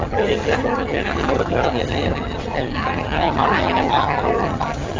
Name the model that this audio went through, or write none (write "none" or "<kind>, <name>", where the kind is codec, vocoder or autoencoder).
vocoder, HiFi-GAN